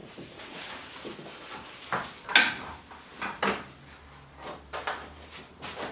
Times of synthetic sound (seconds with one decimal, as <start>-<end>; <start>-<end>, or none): 0.0-0.7